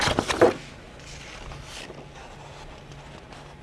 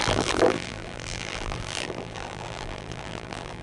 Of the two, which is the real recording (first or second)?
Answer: first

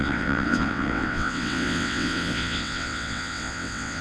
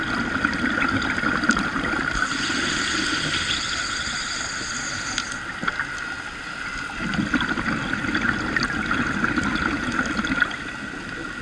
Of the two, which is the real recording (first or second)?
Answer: second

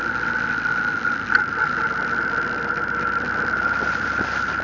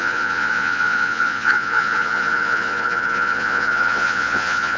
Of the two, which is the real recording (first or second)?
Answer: first